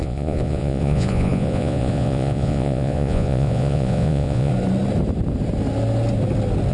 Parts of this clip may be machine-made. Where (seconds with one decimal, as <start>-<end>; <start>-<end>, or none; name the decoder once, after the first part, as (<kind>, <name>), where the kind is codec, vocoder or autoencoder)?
0.0-4.5 (vocoder, Vocos)